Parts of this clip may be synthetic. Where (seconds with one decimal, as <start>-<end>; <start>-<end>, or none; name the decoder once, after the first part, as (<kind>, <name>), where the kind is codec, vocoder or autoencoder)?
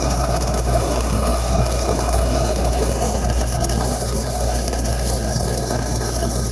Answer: 0.0-6.5 (codec, SNAC)